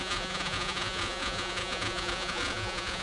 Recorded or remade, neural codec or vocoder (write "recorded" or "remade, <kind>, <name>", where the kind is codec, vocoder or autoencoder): remade, vocoder, Vocos